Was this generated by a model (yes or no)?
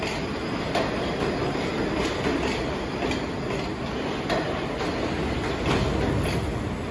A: no